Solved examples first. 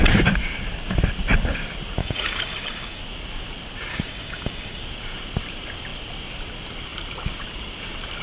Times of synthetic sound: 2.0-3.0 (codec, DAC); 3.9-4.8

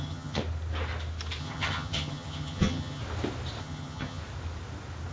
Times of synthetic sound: 0.0-0.4 (vocoder, HiFi-GAN); 1.4-3.0; 3.6-4.2

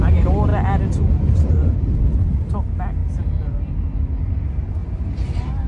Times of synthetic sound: 3.0-3.7 (vocoder, BigVGAN v2); 4.8-5.7

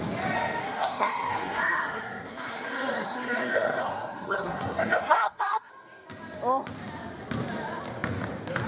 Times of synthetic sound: 0.6-5.7 (codec, SNAC)

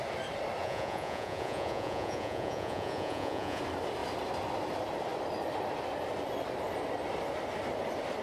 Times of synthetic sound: 0.6-3.6 (vocoder, Vocos)

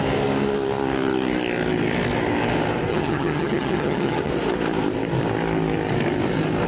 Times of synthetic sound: 2.9-4.3 (vocoder, HiFi-GAN)

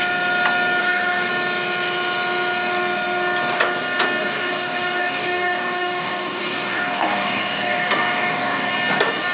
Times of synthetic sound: 0.8-1.3 (codec, DAC); 4.2-8.7

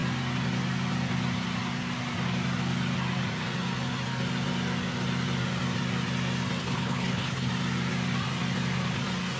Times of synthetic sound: 6.6-7.5 (codec, HILCodec)